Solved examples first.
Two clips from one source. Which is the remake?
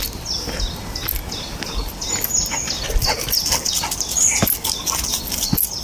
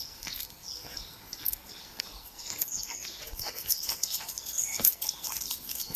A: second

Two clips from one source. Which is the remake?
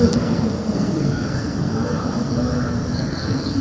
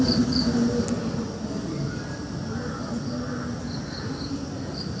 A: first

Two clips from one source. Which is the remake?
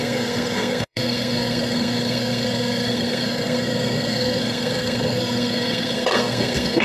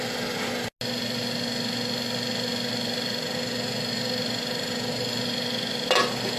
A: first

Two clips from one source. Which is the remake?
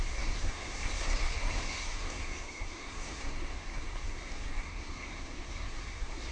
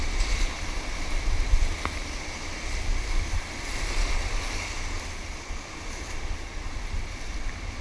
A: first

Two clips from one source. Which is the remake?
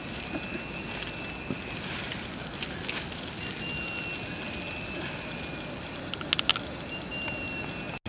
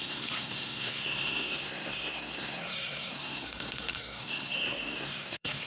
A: second